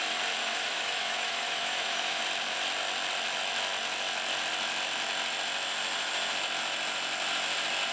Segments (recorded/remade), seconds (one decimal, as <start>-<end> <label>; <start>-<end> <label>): 0.0-0.4 recorded; 0.4-2.2 remade; 2.2-7.9 recorded